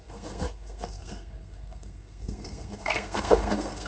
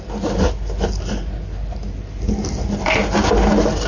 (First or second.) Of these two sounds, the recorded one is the second